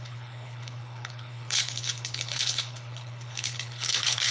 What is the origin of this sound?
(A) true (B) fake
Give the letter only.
B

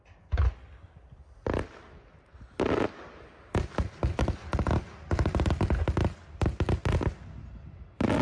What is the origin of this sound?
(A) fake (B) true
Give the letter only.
B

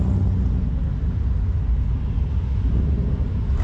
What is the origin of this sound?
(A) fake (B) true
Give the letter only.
B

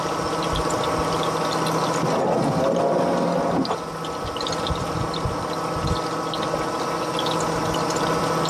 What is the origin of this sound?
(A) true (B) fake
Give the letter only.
A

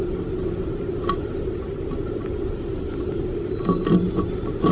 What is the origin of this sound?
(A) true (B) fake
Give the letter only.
A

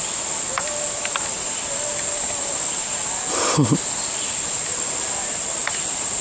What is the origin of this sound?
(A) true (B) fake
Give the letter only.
A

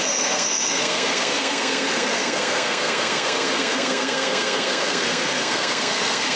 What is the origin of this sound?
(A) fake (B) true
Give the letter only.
A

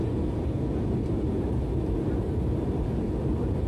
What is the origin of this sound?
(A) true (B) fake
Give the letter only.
A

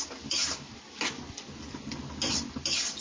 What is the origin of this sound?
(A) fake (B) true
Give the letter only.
B